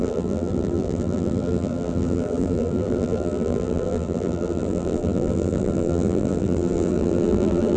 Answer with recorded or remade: remade